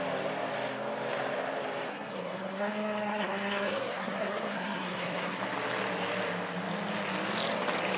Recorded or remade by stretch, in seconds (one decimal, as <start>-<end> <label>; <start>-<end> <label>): 0.0-1.9 recorded; 1.9-5.4 remade; 5.4-8.0 recorded